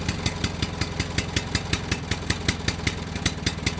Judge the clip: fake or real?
real